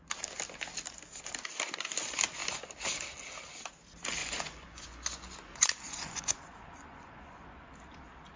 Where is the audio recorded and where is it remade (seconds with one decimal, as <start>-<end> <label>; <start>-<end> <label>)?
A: 0.0-4.2 recorded; 4.2-7.7 remade; 7.7-8.4 recorded